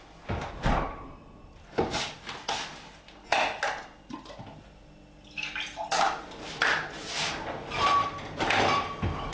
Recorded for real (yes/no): yes